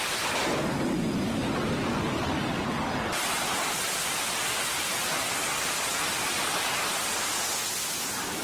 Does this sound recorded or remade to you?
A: recorded